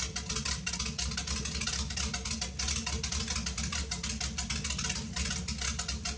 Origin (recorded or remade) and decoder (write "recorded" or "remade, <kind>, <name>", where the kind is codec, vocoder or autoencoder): recorded